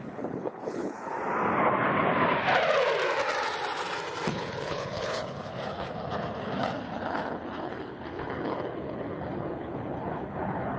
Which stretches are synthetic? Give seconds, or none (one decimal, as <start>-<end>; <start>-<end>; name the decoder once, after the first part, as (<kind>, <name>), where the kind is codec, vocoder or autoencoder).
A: 0.0-1.1 (codec, HILCodec); 4.3-10.8